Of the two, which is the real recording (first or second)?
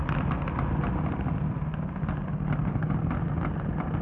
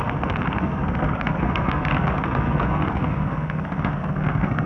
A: first